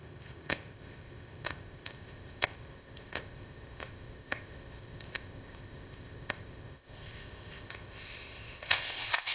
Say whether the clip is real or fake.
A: fake